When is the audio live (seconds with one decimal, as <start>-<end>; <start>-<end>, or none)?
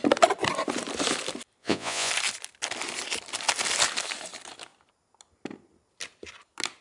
0.0-1.6; 2.1-6.8